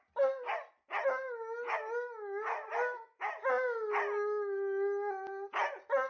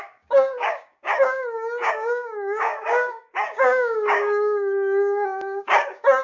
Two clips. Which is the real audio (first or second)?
first